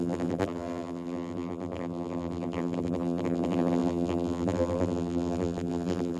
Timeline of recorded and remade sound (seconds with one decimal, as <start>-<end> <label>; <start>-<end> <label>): 0.0-6.2 remade